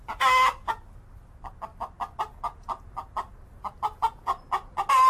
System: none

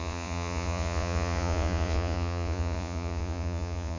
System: vocoder, Vocos